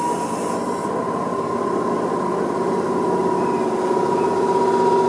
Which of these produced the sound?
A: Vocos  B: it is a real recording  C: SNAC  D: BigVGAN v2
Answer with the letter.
D